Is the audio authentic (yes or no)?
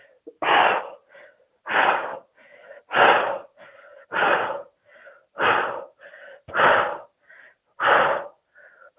yes